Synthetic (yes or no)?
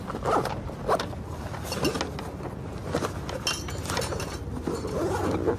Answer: no